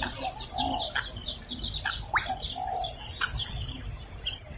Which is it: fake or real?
real